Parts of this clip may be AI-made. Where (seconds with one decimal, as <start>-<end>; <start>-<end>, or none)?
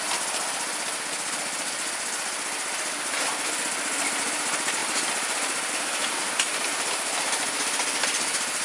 none